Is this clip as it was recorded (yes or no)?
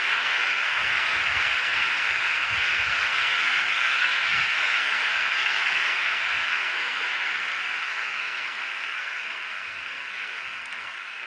no